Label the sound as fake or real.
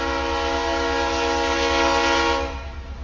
real